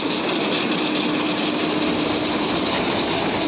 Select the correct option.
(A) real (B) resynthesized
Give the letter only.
A